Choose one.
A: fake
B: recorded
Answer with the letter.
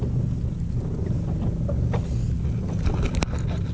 B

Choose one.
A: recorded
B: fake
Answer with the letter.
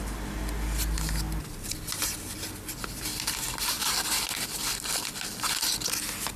A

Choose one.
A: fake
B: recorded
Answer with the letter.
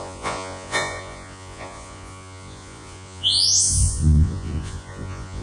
A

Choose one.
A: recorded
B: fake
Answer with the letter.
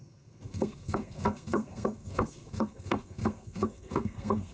B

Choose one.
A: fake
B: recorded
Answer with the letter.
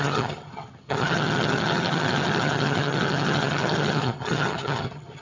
A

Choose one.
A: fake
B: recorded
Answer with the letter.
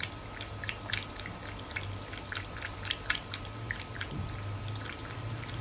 B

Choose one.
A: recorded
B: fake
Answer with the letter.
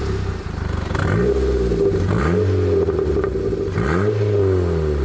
A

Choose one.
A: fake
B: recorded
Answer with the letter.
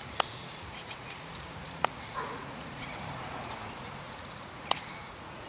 A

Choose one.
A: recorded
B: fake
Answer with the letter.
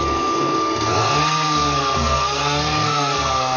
B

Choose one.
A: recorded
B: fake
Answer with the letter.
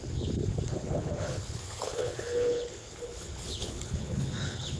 B